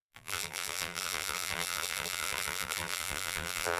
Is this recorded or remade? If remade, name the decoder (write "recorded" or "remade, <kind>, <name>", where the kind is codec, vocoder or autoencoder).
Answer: remade, vocoder, BigVGAN v2